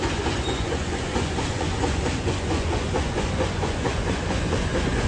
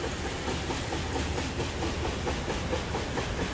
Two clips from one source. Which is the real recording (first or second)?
second